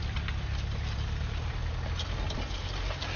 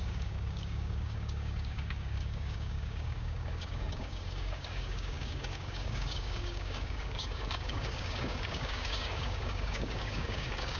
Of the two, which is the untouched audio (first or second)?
first